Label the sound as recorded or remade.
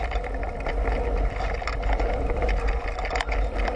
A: recorded